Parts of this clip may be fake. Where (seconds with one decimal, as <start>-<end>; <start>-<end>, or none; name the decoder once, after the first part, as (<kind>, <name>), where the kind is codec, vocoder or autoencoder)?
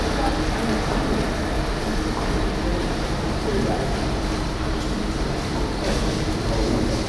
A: 2.7-5.2 (vocoder, BigVGAN v2)